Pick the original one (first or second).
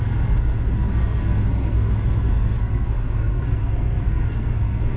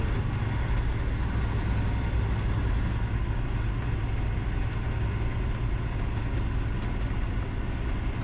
second